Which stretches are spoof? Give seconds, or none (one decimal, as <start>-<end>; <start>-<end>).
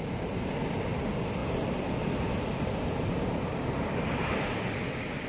none